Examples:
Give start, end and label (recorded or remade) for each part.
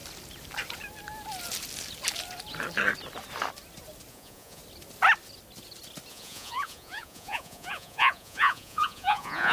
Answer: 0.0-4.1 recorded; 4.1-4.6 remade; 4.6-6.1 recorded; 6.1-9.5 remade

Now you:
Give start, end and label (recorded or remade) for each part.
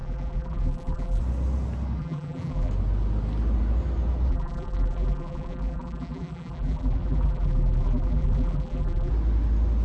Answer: 0.0-1.2 remade; 1.2-2.0 recorded; 2.0-2.7 remade; 2.7-4.3 recorded; 4.3-9.1 remade; 9.1-9.8 recorded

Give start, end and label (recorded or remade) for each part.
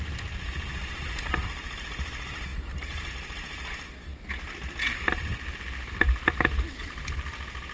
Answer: 0.0-0.7 recorded; 0.7-1.3 remade; 1.3-2.5 recorded; 2.5-3.1 remade; 3.1-7.7 recorded